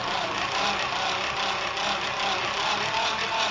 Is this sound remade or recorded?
recorded